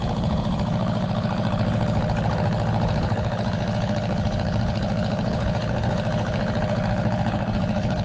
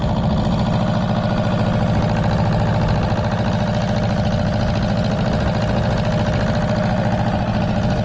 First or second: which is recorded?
second